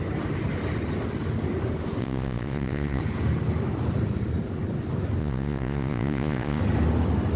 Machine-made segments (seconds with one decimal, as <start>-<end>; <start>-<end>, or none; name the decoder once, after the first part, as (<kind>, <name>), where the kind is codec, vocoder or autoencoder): 2.0-3.0 (vocoder, Vocos); 5.2-6.6